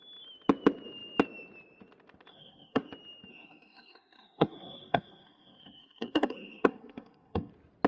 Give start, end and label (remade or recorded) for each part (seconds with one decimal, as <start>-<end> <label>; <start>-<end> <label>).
0.0-2.3 recorded; 2.3-2.9 remade; 2.9-3.3 recorded; 3.3-7.5 remade; 7.5-7.9 recorded